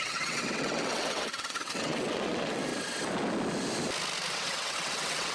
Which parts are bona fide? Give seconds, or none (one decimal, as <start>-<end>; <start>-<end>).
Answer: 2.7-4.3